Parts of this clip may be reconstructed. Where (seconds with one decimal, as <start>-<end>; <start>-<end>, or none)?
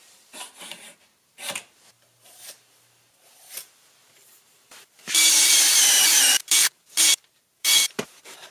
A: 0.0-8.5